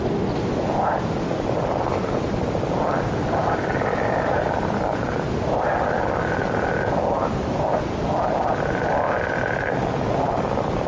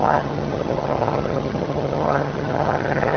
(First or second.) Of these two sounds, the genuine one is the first